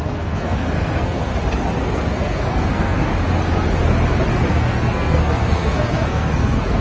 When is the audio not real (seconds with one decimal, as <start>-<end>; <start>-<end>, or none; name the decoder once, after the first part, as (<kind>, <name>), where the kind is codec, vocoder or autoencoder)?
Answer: 0.0-1.3 (codec, SNAC); 1.8-3.1; 4.5-6.8